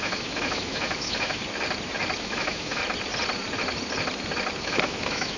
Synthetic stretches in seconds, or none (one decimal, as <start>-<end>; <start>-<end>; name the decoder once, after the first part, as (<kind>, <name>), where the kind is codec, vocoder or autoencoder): 0.0-1.4 (autoencoder, DAC-VAE); 2.2-2.8; 4.6-5.4